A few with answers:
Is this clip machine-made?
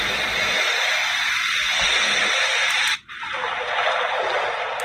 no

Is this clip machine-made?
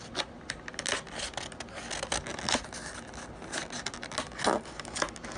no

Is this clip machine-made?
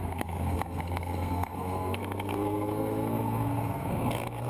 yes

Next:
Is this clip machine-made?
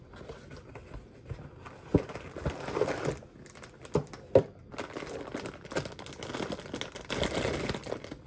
no